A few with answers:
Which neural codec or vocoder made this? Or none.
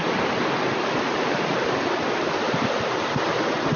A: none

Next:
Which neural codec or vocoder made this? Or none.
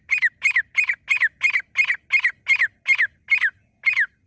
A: none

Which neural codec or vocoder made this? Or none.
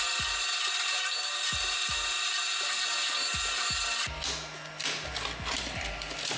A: none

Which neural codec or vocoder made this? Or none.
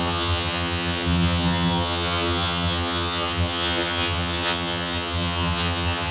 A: vocoder, HiFi-GAN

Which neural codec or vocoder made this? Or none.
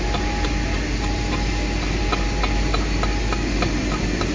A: none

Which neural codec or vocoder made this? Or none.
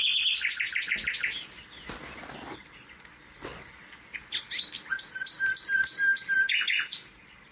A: none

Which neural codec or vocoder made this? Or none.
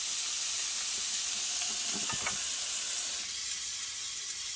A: none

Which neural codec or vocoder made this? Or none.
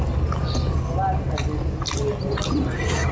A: none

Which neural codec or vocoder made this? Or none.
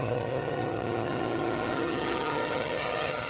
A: vocoder, HiFi-GAN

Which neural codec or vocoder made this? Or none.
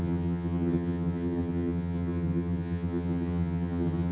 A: vocoder, HiFi-GAN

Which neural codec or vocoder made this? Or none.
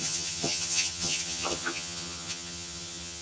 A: vocoder, HiFi-GAN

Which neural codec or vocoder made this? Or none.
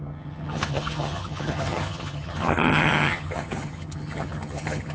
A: vocoder, HiFi-GAN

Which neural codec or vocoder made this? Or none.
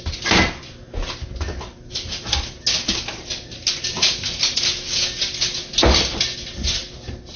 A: none